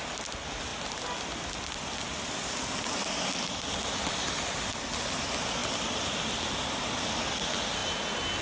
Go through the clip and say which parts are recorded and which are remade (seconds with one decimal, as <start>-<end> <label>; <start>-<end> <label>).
0.0-8.4 recorded